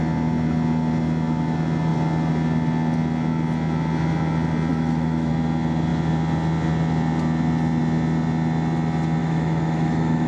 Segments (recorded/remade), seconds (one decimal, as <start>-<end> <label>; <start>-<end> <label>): 0.0-4.7 recorded; 4.7-5.3 remade; 5.3-9.2 recorded; 9.2-10.3 remade